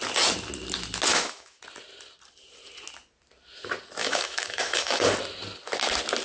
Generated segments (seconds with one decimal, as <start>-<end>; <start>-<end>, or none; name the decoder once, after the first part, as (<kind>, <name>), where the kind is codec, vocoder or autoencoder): 1.1-1.6 (autoencoder, DAC-VAE); 4.0-5.1